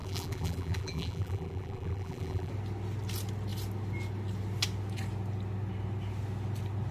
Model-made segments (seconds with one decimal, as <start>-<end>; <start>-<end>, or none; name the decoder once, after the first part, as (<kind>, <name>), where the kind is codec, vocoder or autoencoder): 0.0-2.5 (vocoder, BigVGAN v2)